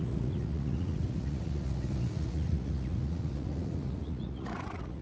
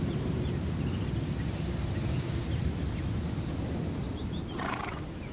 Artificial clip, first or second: first